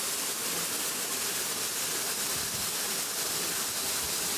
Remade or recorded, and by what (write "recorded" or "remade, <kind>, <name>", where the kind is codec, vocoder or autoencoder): recorded